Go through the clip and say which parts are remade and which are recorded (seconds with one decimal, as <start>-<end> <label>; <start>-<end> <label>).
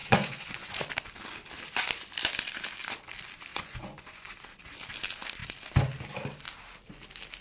0.0-0.8 remade; 0.8-3.5 recorded; 3.5-4.3 remade; 4.3-7.4 recorded